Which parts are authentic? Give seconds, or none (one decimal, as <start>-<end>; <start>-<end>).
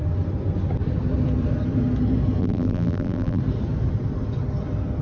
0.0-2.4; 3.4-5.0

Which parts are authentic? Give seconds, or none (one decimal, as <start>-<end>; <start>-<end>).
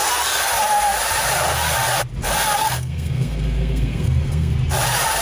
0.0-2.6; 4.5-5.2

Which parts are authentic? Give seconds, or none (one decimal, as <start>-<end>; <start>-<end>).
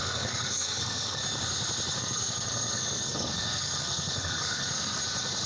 1.2-2.0; 5.0-5.5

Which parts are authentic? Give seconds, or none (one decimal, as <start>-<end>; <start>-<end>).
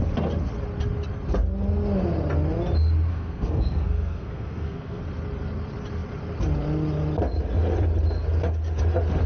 0.0-3.1; 5.0-9.3